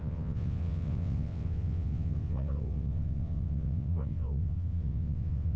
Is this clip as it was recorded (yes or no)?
no